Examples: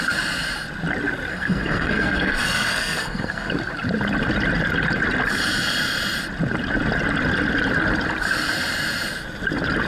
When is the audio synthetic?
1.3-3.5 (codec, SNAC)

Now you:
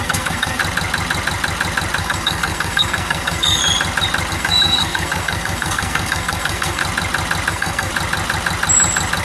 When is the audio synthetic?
0.0-0.6 (codec, SNAC); 2.0-3.6; 4.3-6.8; 7.5-7.9